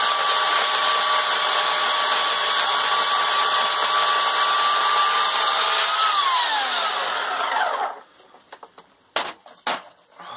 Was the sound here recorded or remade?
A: recorded